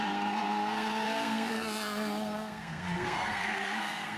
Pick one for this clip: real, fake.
fake